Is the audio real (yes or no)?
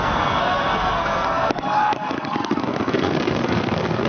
no